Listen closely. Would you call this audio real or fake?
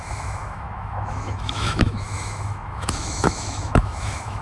fake